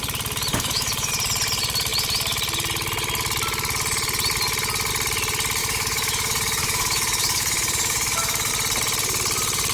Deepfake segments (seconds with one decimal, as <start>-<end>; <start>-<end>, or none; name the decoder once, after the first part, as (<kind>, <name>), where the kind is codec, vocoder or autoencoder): 0.5-1.1 (autoencoder, DAC-VAE); 5.6-8.5